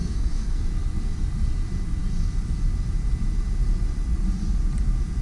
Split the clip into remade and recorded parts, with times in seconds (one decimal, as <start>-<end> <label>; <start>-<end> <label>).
0.0-0.6 remade; 0.6-5.2 recorded